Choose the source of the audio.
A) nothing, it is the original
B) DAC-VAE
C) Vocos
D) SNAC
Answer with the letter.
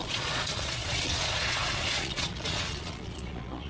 C